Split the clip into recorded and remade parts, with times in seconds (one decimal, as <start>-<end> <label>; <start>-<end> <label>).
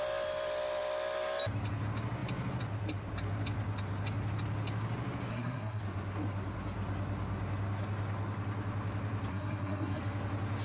0.0-5.3 recorded; 5.3-5.8 remade; 5.8-9.3 recorded; 9.3-10.0 remade; 10.0-10.6 recorded